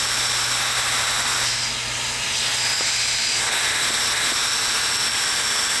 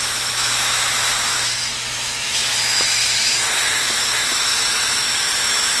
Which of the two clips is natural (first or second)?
first